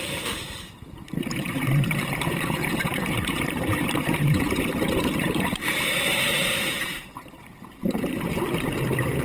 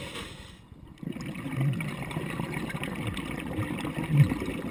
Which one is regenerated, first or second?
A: first